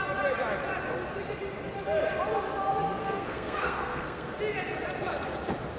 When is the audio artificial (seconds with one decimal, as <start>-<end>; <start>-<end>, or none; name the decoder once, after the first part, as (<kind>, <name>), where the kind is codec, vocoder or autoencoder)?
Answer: 3.0-4.4 (codec, SNAC)